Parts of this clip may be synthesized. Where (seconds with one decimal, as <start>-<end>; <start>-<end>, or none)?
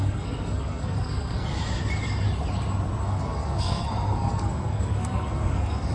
0.0-1.6; 3.0-5.9